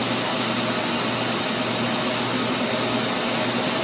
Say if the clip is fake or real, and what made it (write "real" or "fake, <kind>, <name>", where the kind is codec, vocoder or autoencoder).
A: real